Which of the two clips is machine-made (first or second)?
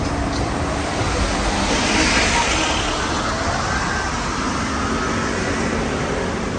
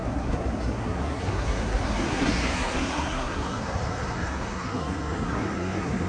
second